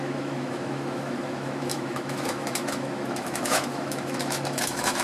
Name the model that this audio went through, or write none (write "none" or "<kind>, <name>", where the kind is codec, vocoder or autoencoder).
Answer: autoencoder, DAC-VAE